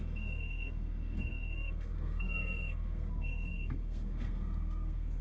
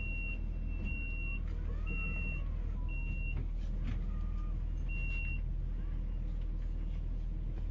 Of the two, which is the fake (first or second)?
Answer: first